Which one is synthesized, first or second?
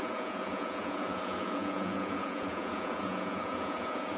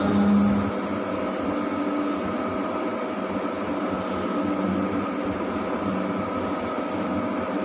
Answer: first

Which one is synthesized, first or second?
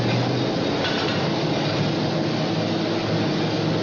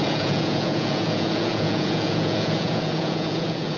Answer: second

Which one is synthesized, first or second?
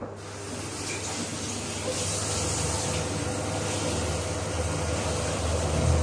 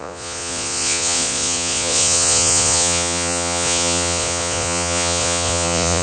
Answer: second